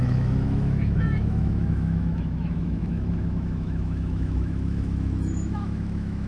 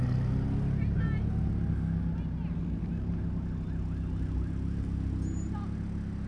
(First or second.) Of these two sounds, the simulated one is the first